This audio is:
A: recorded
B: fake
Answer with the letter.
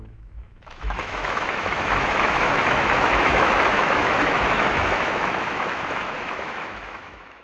B